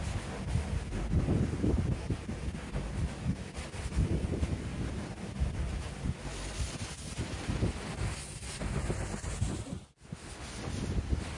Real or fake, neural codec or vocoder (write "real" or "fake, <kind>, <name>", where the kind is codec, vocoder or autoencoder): real